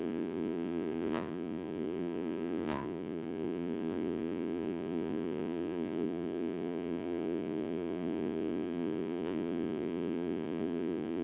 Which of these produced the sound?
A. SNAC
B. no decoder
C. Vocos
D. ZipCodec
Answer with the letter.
C